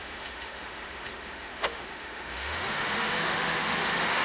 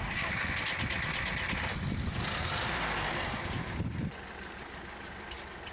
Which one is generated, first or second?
first